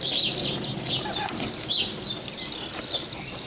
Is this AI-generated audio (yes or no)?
no